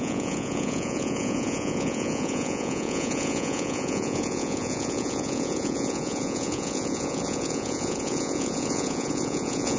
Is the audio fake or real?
fake